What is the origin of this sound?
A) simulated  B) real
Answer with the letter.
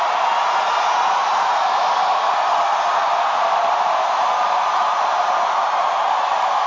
B